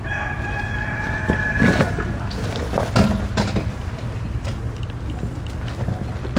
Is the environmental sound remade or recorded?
recorded